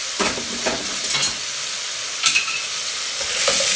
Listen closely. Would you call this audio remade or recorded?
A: recorded